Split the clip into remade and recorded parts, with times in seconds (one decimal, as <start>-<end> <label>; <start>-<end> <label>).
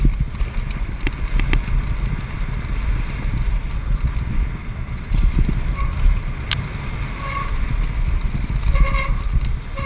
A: 0.0-4.6 recorded; 4.6-5.3 remade; 5.3-9.9 recorded